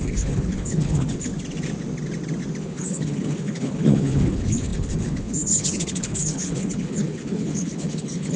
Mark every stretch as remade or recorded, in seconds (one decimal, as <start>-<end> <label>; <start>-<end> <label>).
0.0-1.3 remade; 1.3-2.6 recorded; 2.6-8.4 remade